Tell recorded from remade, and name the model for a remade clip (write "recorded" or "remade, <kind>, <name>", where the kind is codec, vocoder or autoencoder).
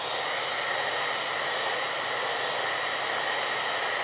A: recorded